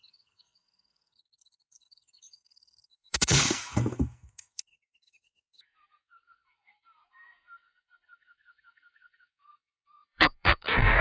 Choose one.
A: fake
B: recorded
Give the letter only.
A